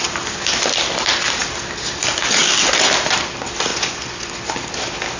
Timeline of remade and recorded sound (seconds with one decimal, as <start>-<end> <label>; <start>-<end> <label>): 0.0-3.7 recorded; 3.7-4.3 remade; 4.3-5.2 recorded